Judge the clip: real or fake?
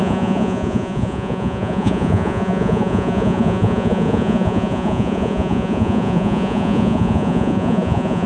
fake